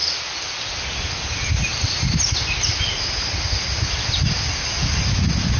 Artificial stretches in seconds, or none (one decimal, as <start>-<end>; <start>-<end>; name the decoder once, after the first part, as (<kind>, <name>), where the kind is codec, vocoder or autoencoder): none